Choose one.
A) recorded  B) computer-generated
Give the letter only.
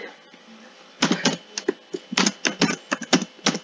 A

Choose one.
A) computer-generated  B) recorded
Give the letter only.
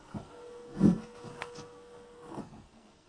A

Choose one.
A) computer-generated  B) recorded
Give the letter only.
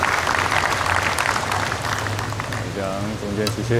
B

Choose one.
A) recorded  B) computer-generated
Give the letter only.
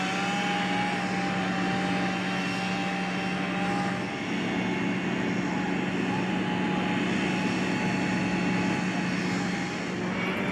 A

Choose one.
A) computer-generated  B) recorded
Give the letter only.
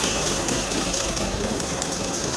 A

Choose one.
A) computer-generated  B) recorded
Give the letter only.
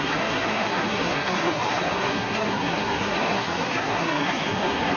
A